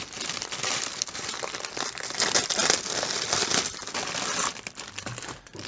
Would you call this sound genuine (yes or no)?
no